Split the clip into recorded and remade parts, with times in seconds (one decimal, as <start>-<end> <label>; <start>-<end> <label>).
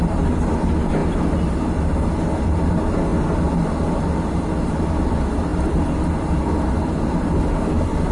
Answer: 0.0-8.1 recorded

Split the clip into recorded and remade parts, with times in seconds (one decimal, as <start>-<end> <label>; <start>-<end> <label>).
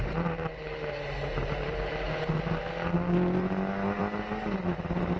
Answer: 0.0-2.6 remade; 2.6-5.2 recorded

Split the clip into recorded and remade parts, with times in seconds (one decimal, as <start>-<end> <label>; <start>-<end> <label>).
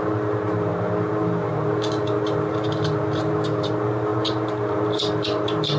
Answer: 0.0-5.8 recorded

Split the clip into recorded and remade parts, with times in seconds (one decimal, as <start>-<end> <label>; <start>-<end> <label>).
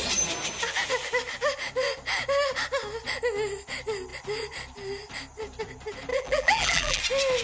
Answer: 0.0-6.1 recorded; 6.1-7.0 remade; 7.0-7.4 recorded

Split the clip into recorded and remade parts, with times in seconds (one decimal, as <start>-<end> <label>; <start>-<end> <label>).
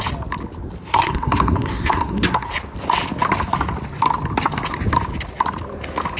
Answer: 0.0-0.8 recorded; 0.8-2.5 remade; 2.5-6.2 recorded